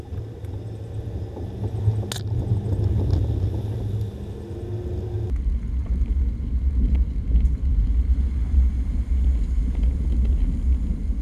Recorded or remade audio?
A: recorded